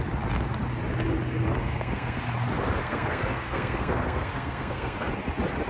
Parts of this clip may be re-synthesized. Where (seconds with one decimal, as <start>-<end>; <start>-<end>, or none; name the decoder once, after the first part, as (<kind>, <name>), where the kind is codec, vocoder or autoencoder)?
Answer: 1.6-2.2 (codec, SNAC); 2.8-5.1